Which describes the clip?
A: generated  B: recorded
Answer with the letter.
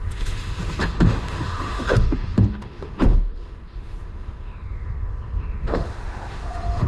A